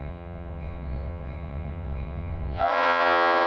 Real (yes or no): no